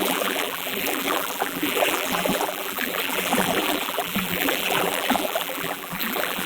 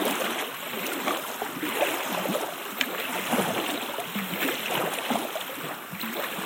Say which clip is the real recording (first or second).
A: second